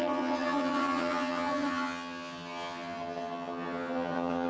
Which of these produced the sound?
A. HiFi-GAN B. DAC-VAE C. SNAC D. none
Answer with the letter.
A